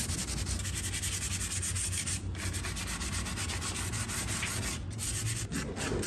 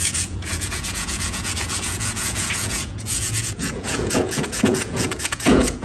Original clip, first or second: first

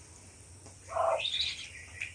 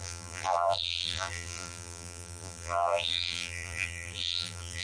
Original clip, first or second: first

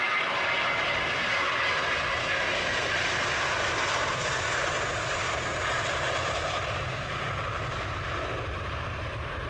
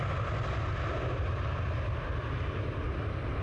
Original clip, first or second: second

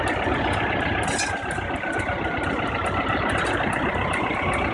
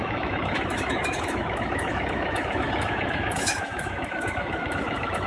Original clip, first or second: first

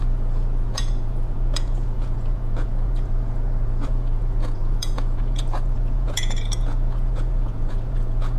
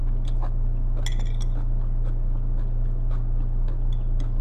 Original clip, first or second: second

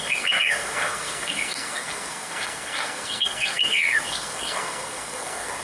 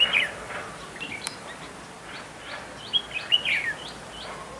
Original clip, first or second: second